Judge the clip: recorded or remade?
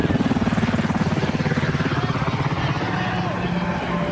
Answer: recorded